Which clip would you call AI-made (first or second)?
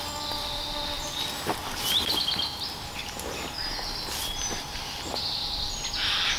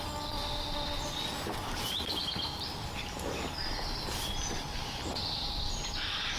second